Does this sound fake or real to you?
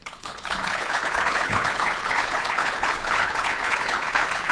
fake